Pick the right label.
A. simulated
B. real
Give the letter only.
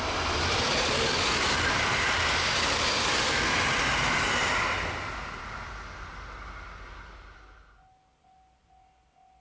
B